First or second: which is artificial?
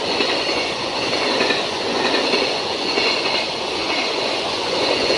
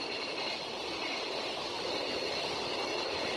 first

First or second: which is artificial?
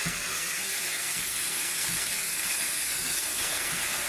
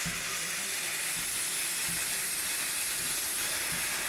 first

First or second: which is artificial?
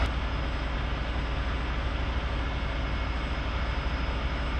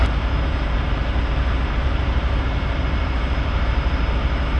second